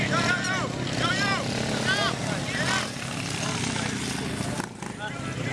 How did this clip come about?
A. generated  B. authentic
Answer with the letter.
B